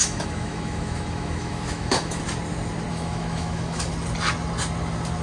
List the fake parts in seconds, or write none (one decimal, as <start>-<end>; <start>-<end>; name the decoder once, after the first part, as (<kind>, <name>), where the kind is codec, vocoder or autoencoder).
0.0-2.2 (autoencoder, DAC-VAE); 2.9-3.9